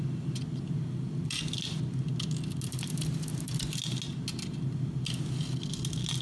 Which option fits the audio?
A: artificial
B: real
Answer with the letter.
B